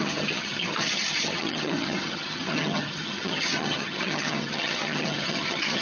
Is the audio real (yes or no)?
no